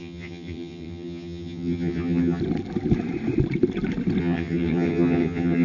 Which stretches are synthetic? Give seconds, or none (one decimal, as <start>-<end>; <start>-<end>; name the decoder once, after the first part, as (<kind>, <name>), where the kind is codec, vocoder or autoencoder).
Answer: 0.0-2.4 (vocoder, HiFi-GAN); 4.2-5.6